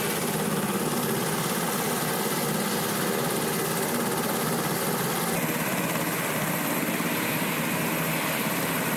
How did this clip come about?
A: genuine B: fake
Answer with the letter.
A